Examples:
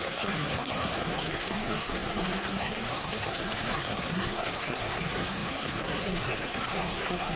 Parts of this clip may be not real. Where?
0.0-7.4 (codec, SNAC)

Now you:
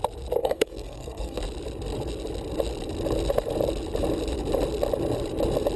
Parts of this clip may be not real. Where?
0.4-1.4 (codec, SNAC)

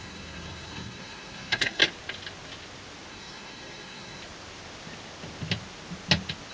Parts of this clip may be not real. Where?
0.0-1.8 (codec, SNAC); 3.1-4.2

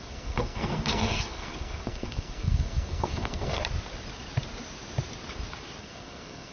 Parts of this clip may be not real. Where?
0.0-3.6 (codec, SNAC); 5.8-6.5

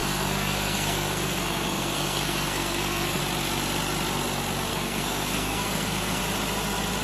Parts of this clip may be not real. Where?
0.0-3.2 (codec, SNAC); 4.7-6.2